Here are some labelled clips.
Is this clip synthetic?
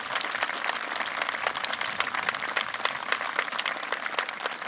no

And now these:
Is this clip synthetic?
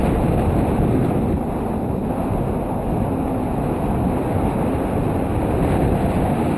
no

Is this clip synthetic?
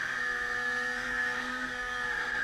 yes